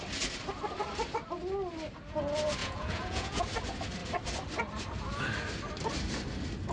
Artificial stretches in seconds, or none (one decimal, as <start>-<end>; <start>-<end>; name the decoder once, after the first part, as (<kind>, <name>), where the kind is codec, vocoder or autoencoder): 2.6-3.4 (vocoder, Vocos)